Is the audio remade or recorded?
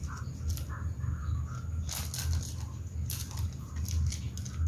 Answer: recorded